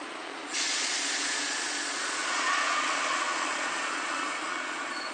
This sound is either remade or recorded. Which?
remade